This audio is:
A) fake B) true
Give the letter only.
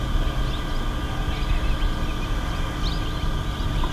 B